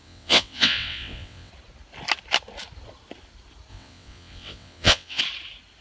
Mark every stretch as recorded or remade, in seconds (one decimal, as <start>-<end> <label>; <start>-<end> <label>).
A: 0.0-1.5 remade; 1.5-3.7 recorded; 3.7-5.2 remade; 5.2-5.8 recorded